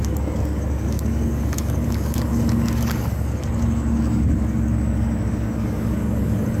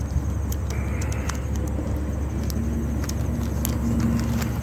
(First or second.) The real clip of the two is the second